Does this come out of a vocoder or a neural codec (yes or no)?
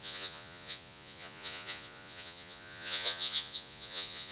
yes